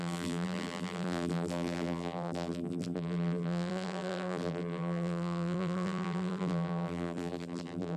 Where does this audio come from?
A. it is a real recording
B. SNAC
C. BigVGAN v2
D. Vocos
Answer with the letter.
C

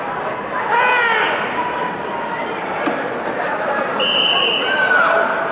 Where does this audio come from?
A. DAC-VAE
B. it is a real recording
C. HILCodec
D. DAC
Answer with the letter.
B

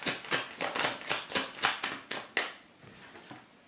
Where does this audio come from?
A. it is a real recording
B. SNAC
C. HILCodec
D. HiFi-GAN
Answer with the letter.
A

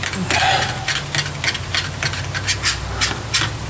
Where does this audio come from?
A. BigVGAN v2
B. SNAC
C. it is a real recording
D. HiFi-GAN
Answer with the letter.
C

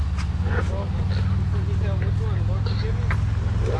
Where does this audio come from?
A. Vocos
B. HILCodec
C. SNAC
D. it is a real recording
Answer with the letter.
D